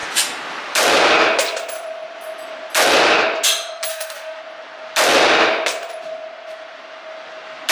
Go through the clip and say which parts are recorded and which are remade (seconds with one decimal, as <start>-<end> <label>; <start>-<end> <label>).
0.0-3.9 recorded; 3.9-4.4 remade; 4.4-7.7 recorded